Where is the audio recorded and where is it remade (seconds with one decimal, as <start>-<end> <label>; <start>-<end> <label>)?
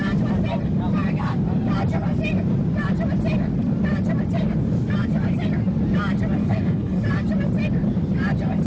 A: 0.0-6.4 recorded; 6.4-7.0 remade; 7.0-8.7 recorded